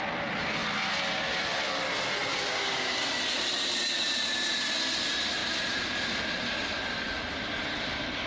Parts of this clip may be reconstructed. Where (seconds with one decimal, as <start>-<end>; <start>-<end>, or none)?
2.3-2.9